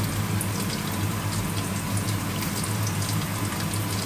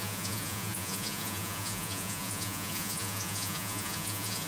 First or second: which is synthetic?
second